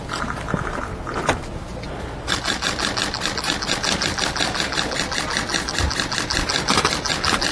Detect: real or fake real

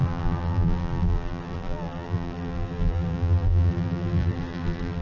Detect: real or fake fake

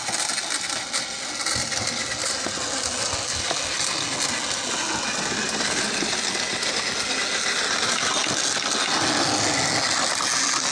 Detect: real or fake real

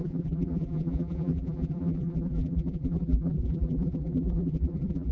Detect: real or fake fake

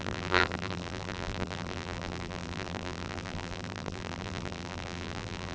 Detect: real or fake fake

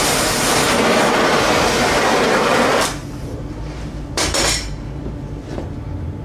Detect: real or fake fake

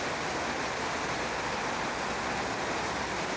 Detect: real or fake real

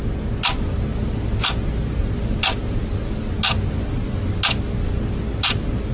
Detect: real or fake real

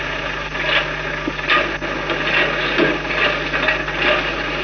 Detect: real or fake real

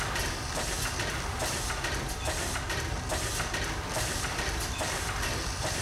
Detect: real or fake fake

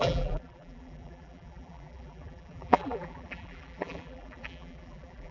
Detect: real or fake fake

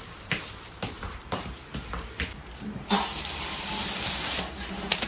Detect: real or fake fake